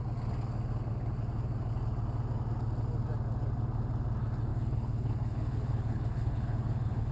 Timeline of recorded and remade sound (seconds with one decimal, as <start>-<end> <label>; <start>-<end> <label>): 0.0-4.5 recorded; 4.5-7.1 remade